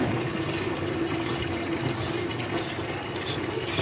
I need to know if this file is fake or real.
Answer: real